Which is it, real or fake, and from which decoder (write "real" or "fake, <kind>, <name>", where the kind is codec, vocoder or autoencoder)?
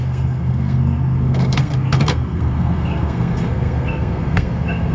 fake, codec, SNAC